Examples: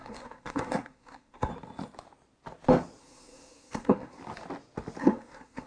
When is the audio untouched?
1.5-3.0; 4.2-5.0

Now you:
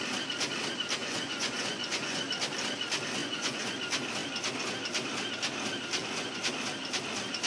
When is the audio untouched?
0.0-1.0; 2.2-3.2; 3.7-6.0; 6.5-7.5

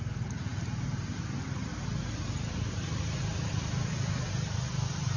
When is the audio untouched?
0.0-5.2

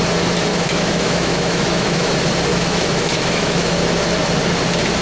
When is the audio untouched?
0.0-0.5; 2.1-2.5; 3.7-5.0